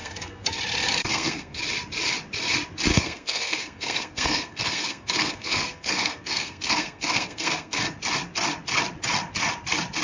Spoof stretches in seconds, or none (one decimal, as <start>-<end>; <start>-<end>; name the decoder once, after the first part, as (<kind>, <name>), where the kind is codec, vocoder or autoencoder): 0.0-0.6 (codec, SNAC); 1.0-1.6; 2.9-7.8